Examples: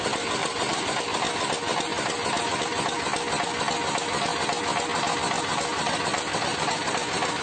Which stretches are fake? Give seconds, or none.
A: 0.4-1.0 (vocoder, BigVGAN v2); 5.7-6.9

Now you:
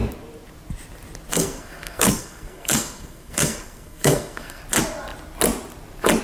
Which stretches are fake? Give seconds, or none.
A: 1.3-4.6 (codec, SNAC)

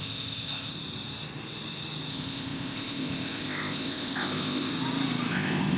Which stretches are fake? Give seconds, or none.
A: 0.0-0.7 (codec, ZipCodec); 2.1-4.7; 5.3-5.8

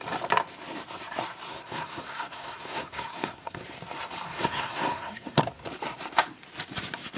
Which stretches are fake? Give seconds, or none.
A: 1.5-3.6 (codec, SNAC); 4.3-5.4